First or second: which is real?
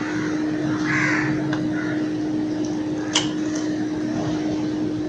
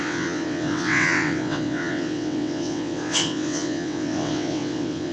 first